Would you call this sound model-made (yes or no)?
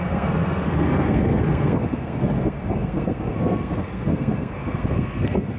yes